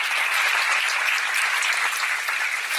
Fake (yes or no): no